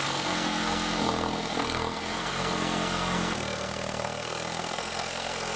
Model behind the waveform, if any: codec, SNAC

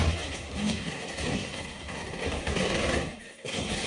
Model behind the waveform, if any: codec, SNAC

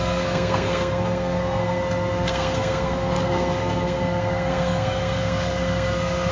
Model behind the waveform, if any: codec, SNAC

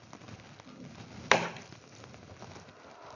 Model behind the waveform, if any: none